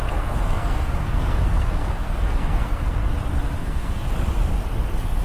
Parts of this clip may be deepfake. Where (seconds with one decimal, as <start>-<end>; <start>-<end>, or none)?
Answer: 0.0-3.1; 3.6-4.1